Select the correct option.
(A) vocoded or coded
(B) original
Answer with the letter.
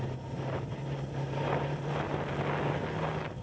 B